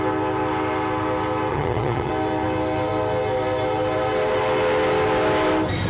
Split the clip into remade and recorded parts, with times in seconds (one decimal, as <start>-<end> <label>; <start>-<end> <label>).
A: 0.0-1.5 recorded; 1.5-2.1 remade; 2.1-5.9 recorded